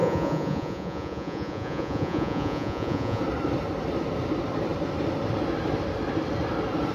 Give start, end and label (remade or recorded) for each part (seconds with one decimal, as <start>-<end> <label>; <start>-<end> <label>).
0.0-3.2 remade; 3.2-6.9 recorded